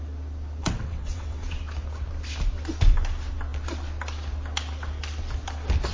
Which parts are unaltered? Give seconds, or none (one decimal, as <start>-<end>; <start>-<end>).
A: 0.0-0.6; 1.6-5.9